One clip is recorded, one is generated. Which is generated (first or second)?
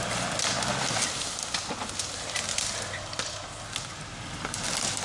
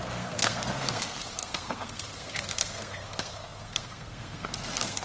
second